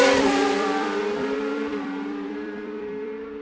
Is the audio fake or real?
fake